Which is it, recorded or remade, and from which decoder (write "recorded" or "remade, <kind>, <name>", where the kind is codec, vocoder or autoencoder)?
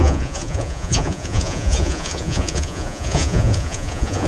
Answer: remade, vocoder, Vocos